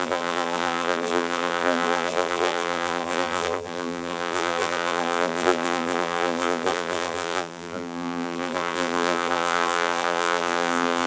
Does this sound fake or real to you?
fake